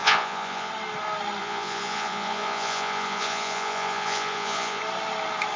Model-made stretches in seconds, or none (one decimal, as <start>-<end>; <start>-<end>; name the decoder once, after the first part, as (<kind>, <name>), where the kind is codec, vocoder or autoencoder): 0.0-0.7 (vocoder, Vocos); 1.4-4.8